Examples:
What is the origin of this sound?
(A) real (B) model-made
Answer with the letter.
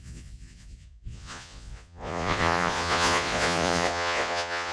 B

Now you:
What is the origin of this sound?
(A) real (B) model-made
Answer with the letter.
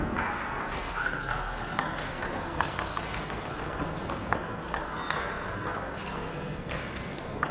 B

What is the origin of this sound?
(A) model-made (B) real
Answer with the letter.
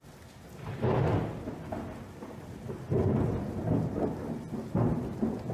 B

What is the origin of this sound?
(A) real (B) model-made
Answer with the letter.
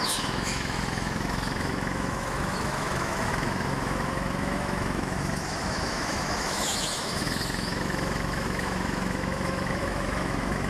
B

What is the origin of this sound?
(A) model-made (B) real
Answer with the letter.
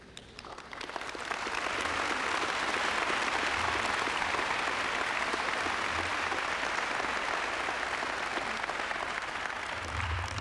B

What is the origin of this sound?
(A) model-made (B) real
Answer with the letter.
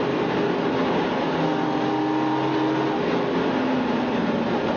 B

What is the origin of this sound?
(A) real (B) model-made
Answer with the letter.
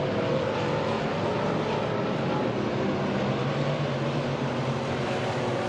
A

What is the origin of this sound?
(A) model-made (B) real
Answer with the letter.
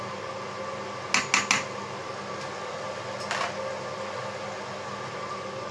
B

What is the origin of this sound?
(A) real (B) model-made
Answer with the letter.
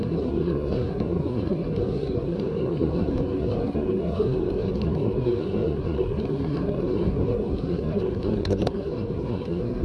B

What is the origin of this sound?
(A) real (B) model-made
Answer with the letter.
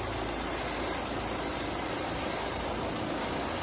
A